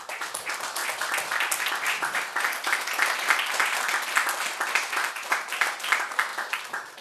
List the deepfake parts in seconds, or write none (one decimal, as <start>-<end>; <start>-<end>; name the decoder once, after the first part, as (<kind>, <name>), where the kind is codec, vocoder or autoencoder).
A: 0.0-0.8 (vocoder, BigVGAN v2); 1.7-2.3; 5.1-7.0